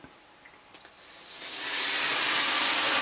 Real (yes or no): yes